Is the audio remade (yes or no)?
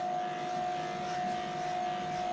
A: no